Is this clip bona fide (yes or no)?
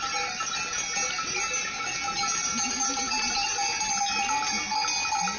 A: yes